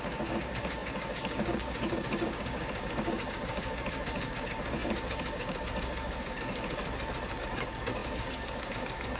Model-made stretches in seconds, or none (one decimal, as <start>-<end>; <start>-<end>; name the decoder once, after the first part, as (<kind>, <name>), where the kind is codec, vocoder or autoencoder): 0.0-6.8 (codec, DAC); 7.3-9.2